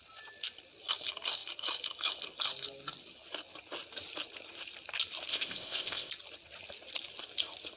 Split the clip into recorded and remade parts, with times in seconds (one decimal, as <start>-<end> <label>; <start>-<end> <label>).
0.0-5.3 recorded; 5.3-6.1 remade; 6.1-7.8 recorded

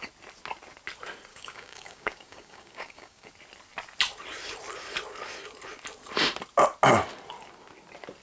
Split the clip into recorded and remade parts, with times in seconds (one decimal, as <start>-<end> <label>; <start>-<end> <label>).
0.0-1.3 recorded; 1.3-3.3 remade; 3.3-8.2 recorded

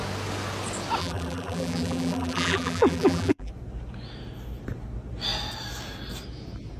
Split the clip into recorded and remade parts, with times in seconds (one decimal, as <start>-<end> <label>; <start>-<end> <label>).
0.0-1.0 recorded; 1.0-3.5 remade; 3.5-6.8 recorded

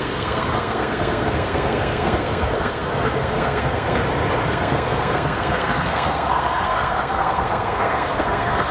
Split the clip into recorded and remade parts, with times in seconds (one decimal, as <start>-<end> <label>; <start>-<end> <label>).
0.0-4.0 remade; 4.0-4.5 recorded; 4.5-8.7 remade

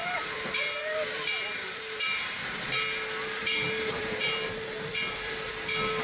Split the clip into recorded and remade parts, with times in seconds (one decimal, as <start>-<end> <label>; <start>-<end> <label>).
0.0-2.6 remade; 2.6-3.4 recorded; 3.4-5.5 remade; 5.5-6.0 recorded

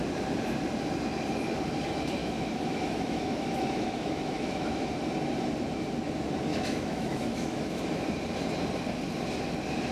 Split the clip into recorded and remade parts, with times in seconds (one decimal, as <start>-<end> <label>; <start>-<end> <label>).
0.0-2.2 recorded; 2.2-4.9 remade; 4.9-6.5 recorded; 6.5-7.8 remade; 7.8-9.9 recorded